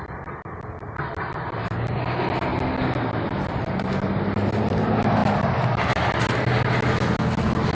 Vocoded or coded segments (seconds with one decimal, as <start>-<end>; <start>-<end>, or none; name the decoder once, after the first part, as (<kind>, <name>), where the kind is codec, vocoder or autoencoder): none